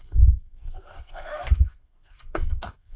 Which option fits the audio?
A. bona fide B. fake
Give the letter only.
B